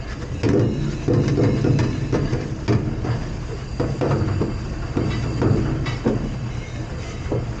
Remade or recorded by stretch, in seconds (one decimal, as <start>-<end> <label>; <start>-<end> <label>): 0.0-7.6 recorded